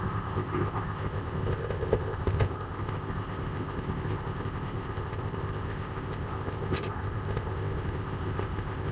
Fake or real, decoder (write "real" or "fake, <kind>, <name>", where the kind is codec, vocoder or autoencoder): fake, codec, ZipCodec